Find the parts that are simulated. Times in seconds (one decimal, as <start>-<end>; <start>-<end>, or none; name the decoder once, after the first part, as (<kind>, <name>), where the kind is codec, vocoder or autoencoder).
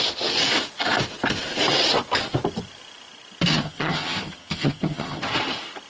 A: 3.5-5.2 (vocoder, HiFi-GAN)